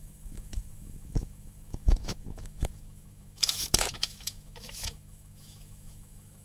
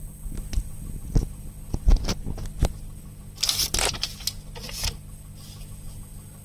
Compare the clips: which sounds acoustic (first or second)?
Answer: second